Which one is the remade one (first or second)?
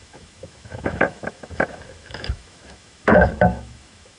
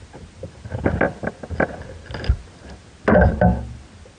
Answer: first